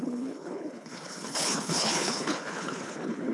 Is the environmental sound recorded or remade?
remade